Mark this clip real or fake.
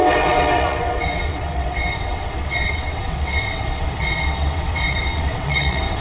fake